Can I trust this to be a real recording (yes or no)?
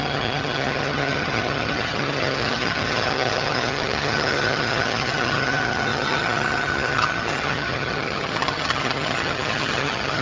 no